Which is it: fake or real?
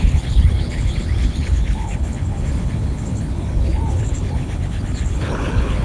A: fake